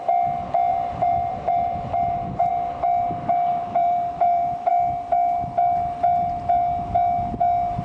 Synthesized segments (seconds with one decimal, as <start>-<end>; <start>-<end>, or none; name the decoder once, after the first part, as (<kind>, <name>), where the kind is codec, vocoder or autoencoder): 0.7-2.5 (vocoder, BigVGAN v2); 3.5-4.7